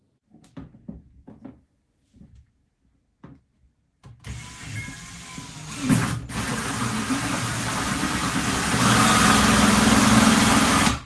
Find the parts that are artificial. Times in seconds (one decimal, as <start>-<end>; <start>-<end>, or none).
none